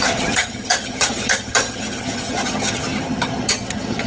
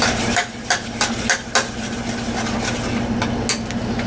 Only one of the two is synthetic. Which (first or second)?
first